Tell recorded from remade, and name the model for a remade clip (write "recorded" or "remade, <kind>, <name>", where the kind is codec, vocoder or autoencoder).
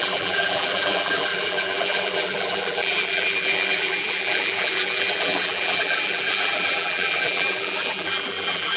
remade, vocoder, BigVGAN v2